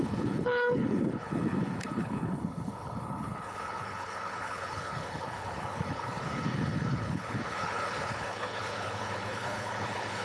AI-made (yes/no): yes